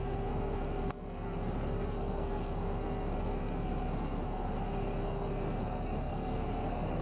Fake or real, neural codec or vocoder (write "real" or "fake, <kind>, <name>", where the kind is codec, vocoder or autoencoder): fake, codec, SNAC